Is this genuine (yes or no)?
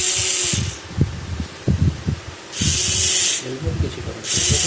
yes